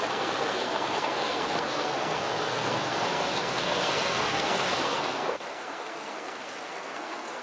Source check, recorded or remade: remade